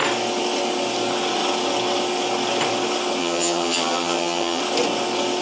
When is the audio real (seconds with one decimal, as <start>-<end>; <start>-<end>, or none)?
0.0-3.2; 4.6-5.4